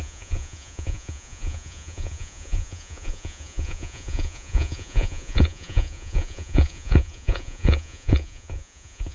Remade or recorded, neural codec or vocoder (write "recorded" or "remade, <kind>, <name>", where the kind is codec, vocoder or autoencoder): remade, vocoder, Vocos